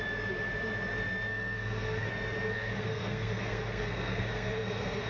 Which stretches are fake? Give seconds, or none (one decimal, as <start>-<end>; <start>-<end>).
1.3-2.1; 2.5-5.1

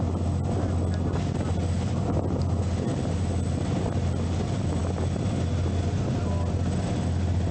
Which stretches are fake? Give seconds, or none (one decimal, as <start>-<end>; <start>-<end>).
none